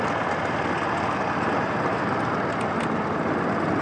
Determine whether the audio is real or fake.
real